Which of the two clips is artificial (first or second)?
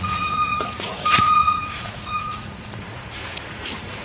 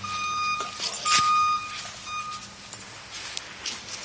first